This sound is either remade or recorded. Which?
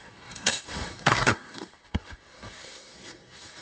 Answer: remade